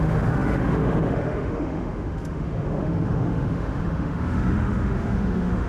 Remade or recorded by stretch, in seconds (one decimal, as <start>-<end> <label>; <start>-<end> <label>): 0.0-5.7 remade